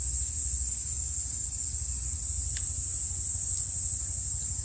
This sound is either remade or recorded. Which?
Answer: recorded